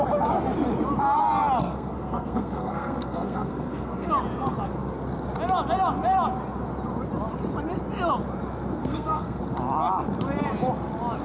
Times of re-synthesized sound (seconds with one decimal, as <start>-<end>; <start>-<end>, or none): 1.6-4.1; 8.8-9.4